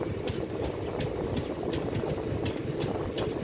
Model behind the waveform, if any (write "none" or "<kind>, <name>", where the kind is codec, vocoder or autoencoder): none